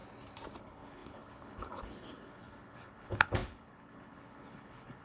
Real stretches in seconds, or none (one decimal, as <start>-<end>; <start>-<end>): 0.0-0.6